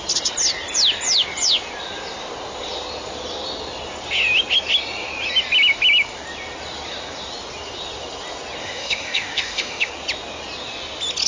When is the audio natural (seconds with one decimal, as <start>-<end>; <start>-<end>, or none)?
0.0-8.6; 9.9-11.3